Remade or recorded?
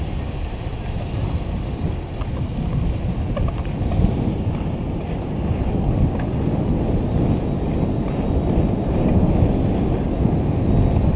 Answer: recorded